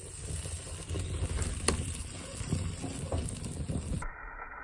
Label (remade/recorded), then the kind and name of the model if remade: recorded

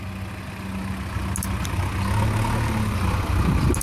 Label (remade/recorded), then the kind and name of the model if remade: recorded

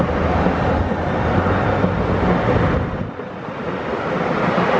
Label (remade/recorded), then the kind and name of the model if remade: recorded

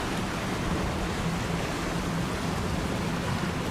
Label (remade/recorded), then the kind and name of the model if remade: recorded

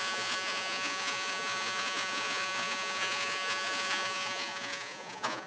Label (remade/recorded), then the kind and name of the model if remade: remade, vocoder, Vocos